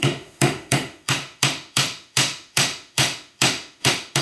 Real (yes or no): no